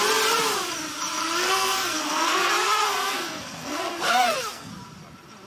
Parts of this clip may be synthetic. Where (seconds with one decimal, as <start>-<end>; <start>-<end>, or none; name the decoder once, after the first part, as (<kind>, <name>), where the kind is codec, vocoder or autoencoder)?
1.4-4.7 (codec, SNAC)